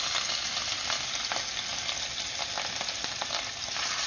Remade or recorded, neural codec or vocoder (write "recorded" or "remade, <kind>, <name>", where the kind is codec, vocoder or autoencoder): recorded